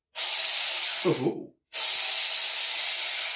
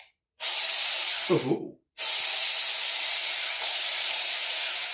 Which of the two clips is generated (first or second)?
second